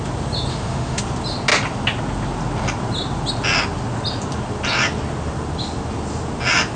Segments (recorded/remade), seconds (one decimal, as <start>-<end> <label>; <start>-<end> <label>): 0.0-0.5 recorded; 0.5-1.0 remade; 1.0-6.8 recorded